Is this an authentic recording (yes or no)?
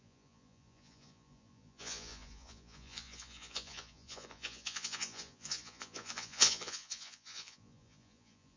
no